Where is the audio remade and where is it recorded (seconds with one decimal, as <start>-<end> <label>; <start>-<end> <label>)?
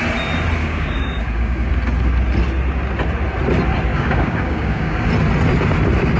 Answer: 0.0-0.6 recorded; 0.6-1.7 remade; 1.7-3.9 recorded; 3.9-5.1 remade; 5.1-6.2 recorded